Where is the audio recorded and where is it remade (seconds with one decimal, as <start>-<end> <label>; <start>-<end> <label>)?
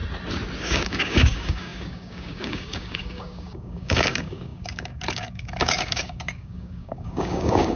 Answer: 0.0-0.6 recorded; 0.6-7.8 remade